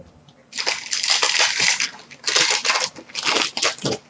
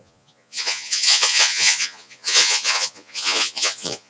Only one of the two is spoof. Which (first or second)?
second